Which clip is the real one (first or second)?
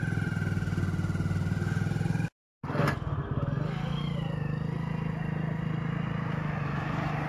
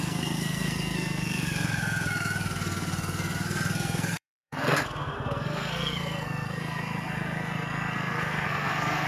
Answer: first